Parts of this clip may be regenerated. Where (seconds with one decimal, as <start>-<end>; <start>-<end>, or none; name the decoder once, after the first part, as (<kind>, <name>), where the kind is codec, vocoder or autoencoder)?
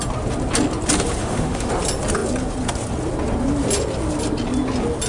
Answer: 1.2-1.7 (autoencoder, DAC-VAE)